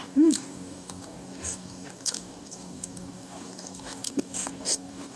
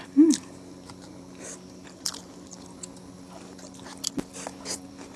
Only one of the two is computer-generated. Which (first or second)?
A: first